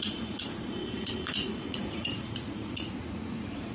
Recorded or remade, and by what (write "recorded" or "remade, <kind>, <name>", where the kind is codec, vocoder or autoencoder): remade, vocoder, Vocos